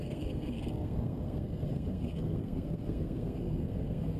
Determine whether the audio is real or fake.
fake